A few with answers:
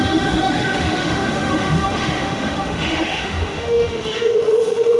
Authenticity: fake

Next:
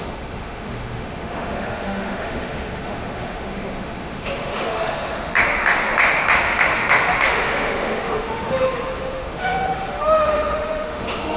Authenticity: fake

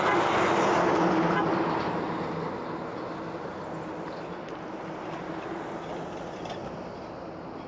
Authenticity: real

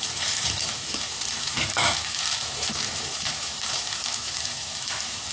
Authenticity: fake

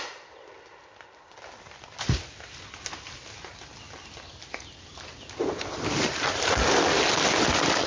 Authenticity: real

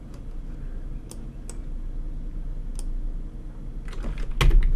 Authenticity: real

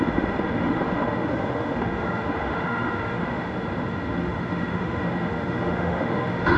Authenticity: fake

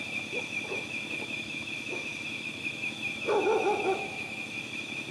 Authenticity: fake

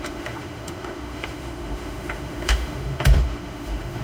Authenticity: fake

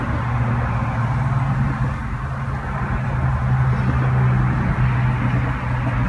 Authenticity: real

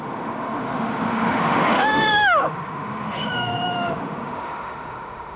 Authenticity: fake